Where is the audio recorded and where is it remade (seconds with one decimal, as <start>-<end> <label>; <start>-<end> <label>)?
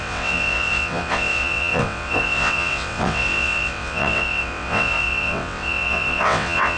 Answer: 0.0-6.8 remade